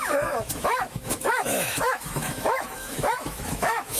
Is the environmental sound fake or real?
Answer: fake